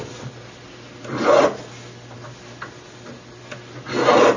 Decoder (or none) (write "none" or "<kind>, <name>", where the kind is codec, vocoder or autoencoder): none